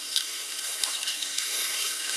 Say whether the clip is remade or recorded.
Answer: remade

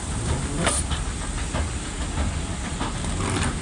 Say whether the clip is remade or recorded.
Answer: recorded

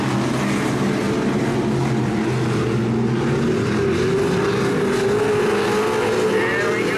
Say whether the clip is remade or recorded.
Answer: recorded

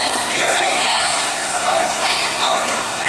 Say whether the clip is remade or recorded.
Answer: remade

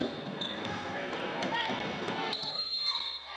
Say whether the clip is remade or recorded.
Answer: remade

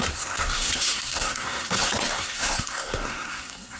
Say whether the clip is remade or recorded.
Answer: remade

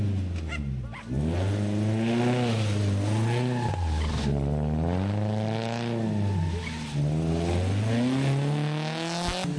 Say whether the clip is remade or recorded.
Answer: recorded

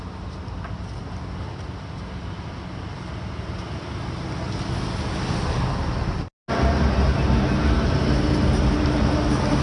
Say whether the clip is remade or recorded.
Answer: recorded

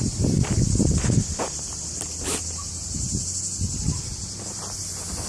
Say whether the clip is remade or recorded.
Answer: recorded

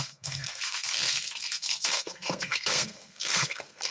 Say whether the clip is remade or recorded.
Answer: remade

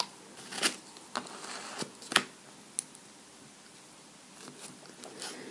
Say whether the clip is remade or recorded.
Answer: recorded